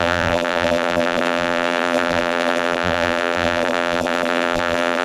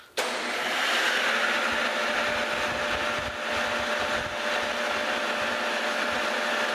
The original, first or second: second